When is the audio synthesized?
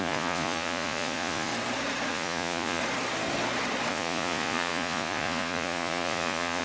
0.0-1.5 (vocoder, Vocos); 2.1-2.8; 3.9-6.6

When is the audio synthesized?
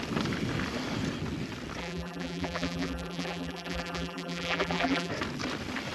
1.8-5.1 (vocoder, BigVGAN v2)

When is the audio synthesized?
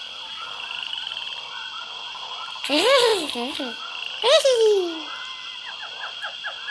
none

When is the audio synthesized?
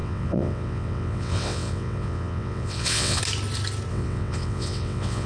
0.0-3.2 (vocoder, WaveNeXt); 3.9-5.3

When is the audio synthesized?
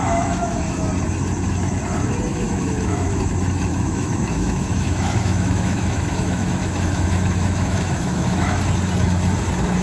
0.0-0.9 (autoencoder, DAC-VAE); 2.3-3.2; 3.7-8.6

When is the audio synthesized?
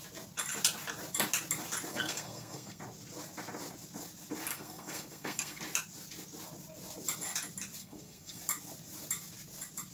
1.9-2.8 (codec, SNAC); 4.5-5.6; 7.8-8.4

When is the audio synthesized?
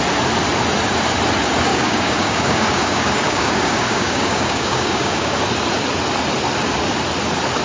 1.7-5.4 (codec, DAC)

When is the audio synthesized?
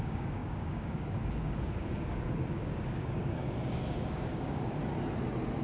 0.0-4.8 (codec, DAC)